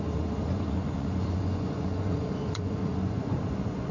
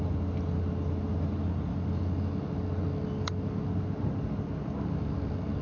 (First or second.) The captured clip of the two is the second